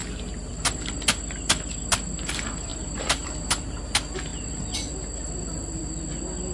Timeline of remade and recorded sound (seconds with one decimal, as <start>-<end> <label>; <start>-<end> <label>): 0.0-1.2 remade; 1.2-2.7 recorded; 2.7-3.8 remade; 3.8-6.5 recorded